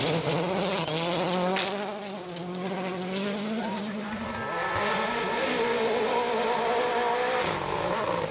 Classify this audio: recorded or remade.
recorded